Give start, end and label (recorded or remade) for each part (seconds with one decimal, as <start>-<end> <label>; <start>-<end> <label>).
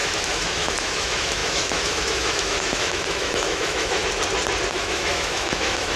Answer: 0.0-4.0 remade; 4.0-4.7 recorded; 4.7-6.0 remade